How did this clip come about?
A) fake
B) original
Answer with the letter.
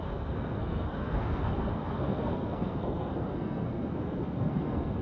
A